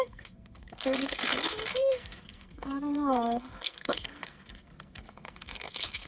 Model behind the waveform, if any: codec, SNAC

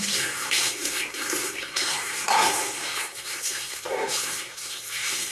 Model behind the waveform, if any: codec, SNAC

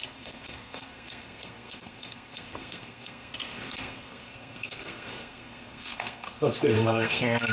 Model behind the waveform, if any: codec, SNAC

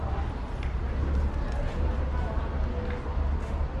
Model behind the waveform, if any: none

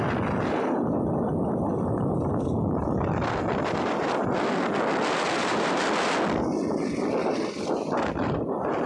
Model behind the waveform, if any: none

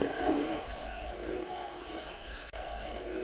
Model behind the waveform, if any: codec, SNAC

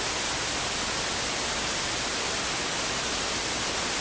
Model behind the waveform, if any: none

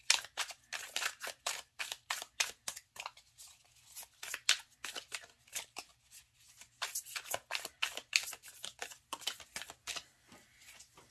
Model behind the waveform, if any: none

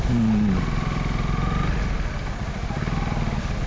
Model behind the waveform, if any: none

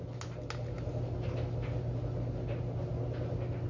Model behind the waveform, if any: none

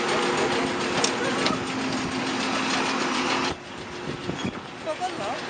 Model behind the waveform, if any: none